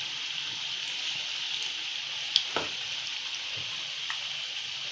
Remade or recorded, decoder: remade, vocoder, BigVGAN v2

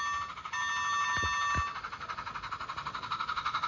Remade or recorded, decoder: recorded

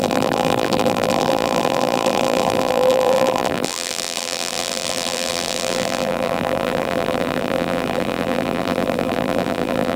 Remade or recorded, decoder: remade, vocoder, BigVGAN v2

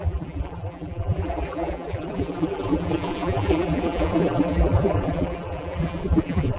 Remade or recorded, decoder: remade, vocoder, BigVGAN v2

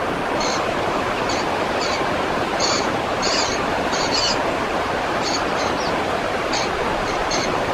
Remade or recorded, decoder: remade, vocoder, BigVGAN v2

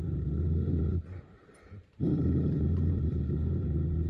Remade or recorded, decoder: remade, vocoder, BigVGAN v2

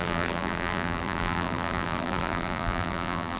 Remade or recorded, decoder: remade, vocoder, BigVGAN v2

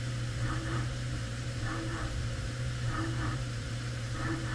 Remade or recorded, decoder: remade, vocoder, BigVGAN v2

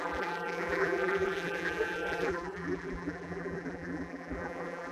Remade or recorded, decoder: remade, vocoder, BigVGAN v2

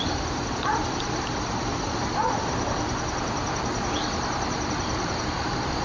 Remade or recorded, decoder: recorded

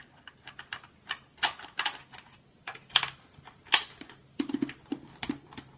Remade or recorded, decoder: recorded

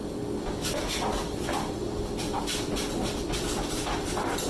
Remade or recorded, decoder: recorded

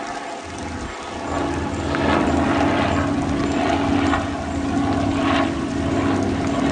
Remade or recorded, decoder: recorded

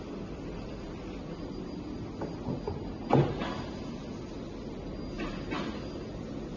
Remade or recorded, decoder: recorded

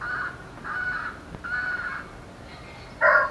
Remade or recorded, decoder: recorded